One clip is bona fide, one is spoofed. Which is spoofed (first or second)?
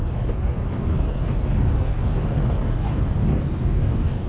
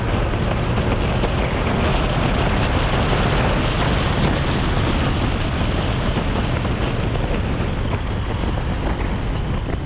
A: first